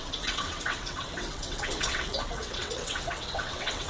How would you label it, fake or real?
fake